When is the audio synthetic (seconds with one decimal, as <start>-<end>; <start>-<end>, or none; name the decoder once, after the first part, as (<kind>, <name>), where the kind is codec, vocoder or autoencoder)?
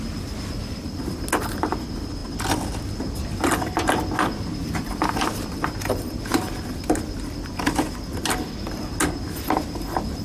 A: none